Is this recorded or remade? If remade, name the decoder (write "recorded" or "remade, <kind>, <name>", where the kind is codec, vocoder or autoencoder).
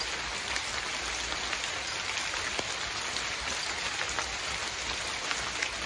recorded